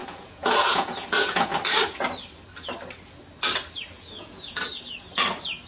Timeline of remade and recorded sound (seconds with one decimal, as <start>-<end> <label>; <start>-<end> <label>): 0.0-1.5 remade; 1.5-4.1 recorded; 4.1-4.7 remade; 4.7-5.7 recorded